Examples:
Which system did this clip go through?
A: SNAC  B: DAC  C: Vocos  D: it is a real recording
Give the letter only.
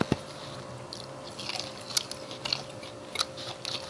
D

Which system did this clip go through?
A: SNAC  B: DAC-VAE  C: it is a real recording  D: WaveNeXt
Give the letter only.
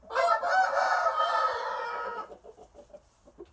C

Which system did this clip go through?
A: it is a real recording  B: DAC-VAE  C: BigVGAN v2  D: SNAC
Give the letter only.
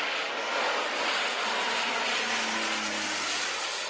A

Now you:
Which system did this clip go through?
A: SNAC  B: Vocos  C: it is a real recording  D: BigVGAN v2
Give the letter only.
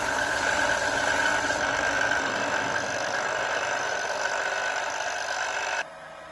C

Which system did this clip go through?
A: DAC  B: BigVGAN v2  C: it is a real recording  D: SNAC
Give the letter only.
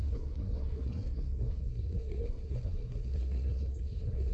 D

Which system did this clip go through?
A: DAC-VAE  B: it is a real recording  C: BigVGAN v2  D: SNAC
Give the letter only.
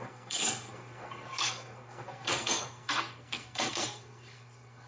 D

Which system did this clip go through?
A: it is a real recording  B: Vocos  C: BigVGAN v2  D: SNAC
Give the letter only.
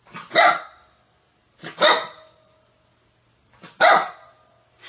A